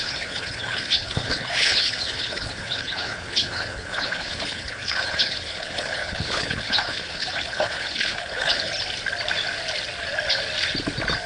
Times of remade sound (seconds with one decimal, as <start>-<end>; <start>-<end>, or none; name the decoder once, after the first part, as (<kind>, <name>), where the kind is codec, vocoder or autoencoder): 0.0-8.7 (codec, HILCodec)